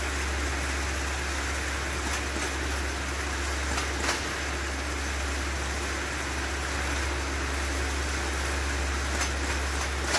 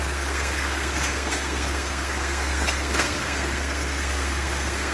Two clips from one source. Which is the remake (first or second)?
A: second